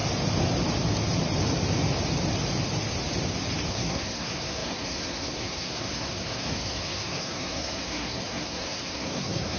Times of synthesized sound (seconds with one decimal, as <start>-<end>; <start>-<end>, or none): 3.7-9.6